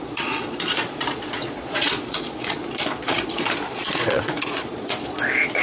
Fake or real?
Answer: fake